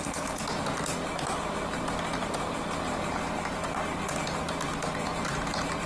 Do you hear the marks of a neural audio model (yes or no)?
no